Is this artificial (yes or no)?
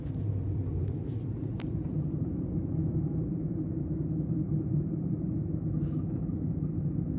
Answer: yes